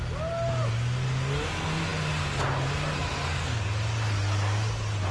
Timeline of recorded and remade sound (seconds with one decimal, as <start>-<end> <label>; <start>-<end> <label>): 0.0-5.1 recorded